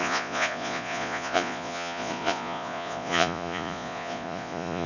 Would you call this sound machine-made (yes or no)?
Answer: yes